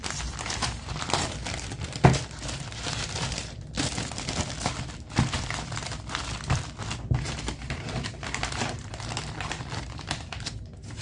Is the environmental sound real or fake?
fake